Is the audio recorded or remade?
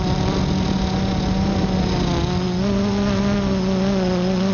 recorded